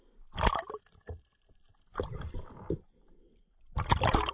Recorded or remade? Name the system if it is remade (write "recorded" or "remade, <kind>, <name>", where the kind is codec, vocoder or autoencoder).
recorded